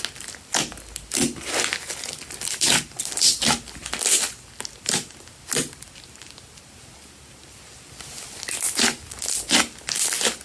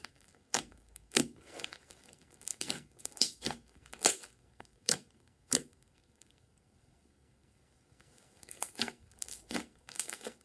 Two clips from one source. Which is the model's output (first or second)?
second